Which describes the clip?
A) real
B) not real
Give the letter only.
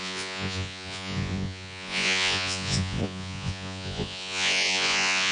B